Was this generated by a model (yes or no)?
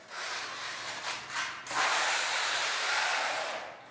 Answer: yes